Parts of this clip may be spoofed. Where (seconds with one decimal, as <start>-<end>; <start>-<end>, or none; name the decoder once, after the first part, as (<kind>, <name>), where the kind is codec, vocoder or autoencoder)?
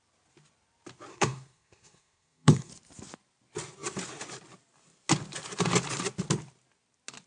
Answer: 1.1-2.7 (codec, SNAC)